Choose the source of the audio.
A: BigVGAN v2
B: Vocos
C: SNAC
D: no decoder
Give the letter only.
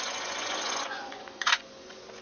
B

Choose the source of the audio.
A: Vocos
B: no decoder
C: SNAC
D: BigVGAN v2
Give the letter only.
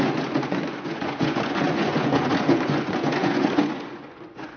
A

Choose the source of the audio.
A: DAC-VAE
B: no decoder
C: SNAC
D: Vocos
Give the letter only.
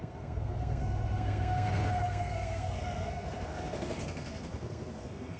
C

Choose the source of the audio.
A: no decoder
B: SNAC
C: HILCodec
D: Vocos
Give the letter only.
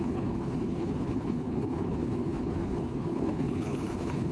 C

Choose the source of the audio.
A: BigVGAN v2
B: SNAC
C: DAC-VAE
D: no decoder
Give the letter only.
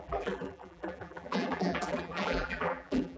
A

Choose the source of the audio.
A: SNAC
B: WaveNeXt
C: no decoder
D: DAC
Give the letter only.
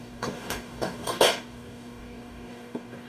D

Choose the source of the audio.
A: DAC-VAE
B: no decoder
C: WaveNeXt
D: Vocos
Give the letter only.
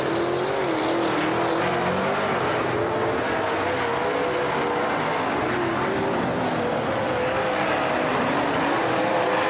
B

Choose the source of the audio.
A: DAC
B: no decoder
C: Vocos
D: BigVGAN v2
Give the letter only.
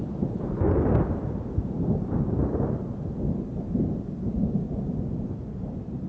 B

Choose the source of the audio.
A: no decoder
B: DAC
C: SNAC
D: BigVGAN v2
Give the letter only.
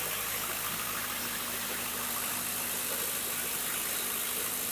D